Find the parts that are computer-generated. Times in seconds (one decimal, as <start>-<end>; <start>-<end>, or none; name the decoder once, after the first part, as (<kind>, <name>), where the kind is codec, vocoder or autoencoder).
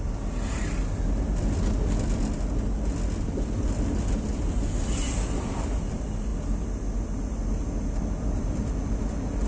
none